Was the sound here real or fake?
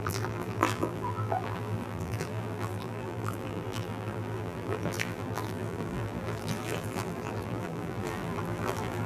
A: fake